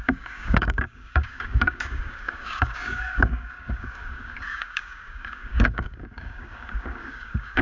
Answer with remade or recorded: remade